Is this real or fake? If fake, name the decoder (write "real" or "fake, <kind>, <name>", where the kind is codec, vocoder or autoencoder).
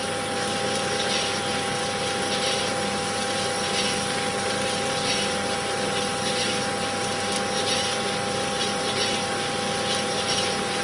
real